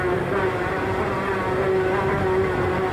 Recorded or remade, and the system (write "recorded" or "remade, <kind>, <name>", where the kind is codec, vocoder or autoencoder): recorded